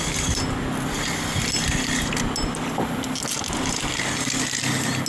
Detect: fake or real real